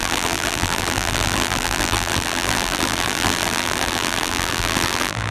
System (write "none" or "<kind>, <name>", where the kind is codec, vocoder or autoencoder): vocoder, BigVGAN v2